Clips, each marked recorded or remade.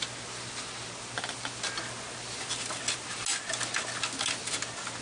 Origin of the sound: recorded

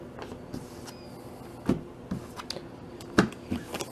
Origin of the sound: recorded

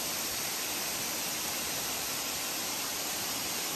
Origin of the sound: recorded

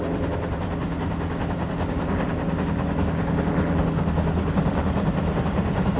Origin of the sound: recorded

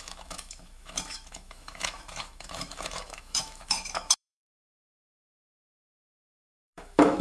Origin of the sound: remade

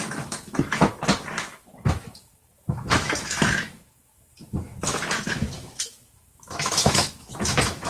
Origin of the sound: remade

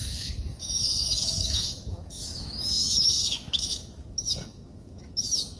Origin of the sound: remade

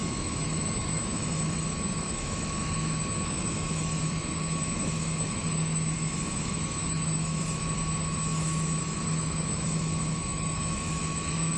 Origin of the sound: remade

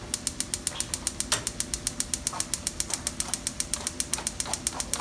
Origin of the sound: recorded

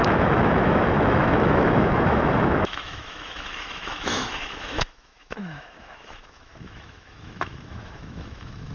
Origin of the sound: remade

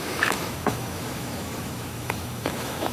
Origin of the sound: remade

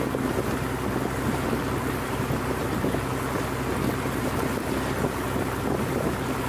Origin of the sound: recorded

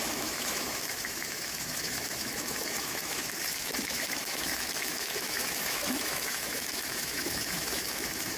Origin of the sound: remade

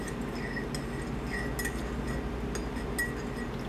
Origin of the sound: recorded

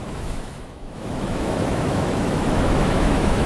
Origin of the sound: remade